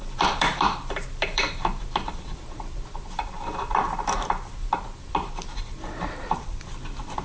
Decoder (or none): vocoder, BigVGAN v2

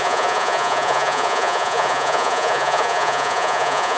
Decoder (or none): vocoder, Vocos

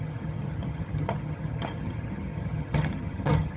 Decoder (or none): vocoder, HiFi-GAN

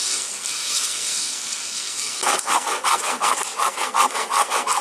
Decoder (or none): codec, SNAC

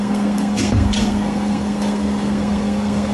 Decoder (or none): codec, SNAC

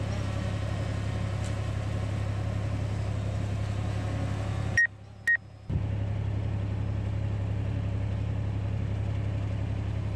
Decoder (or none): none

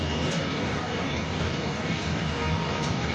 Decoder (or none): codec, DAC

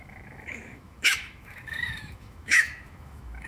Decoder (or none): autoencoder, DAC-VAE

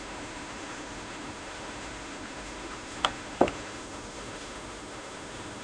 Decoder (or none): autoencoder, DAC-VAE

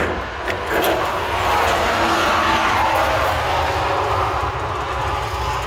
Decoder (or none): none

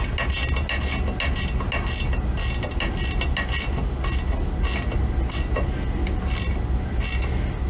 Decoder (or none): none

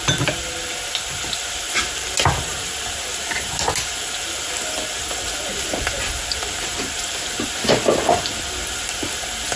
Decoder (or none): none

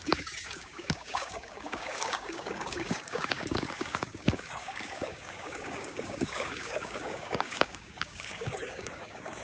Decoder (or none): codec, DAC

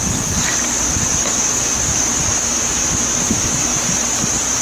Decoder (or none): none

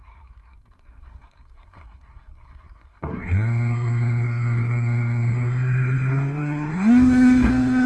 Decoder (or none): codec, SNAC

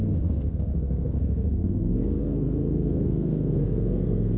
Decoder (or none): codec, SNAC